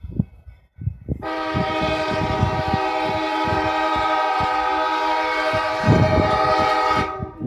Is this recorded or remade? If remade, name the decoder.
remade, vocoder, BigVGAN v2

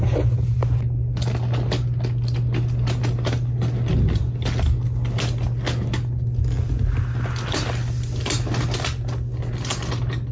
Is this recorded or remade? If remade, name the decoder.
recorded